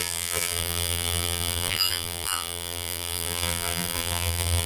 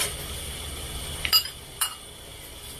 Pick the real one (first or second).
second